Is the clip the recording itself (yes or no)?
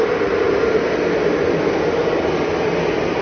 yes